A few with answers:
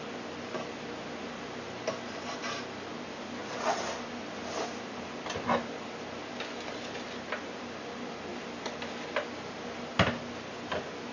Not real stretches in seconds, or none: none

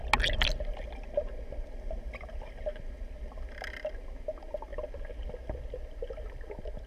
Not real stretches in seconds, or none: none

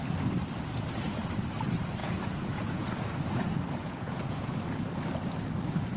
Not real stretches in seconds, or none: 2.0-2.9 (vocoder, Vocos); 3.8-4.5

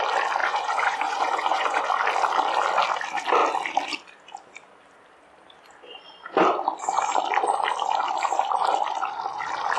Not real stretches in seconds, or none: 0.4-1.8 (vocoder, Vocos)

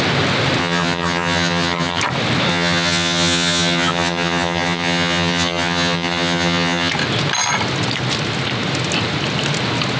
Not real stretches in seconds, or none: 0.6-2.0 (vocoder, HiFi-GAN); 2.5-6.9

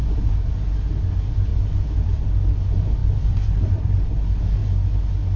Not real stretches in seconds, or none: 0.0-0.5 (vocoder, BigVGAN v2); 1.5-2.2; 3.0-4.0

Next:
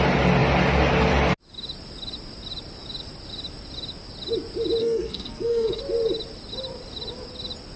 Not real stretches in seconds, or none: 4.8-5.8 (codec, SNAC)